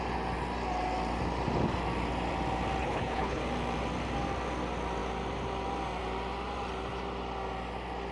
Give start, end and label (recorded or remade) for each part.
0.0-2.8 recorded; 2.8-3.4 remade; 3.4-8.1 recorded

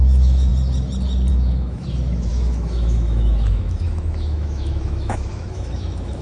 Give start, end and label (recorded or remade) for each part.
0.0-0.5 remade; 0.5-1.3 recorded; 1.3-6.2 remade

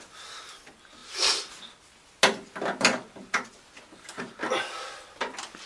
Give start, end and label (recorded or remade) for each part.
0.0-5.7 recorded

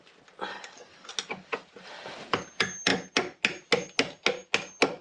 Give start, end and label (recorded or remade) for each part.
0.0-0.5 recorded; 0.5-1.1 remade; 1.1-5.0 recorded

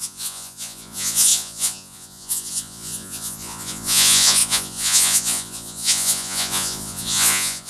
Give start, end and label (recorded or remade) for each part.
0.0-7.7 remade